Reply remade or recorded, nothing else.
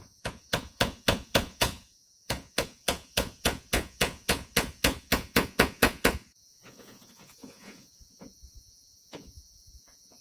remade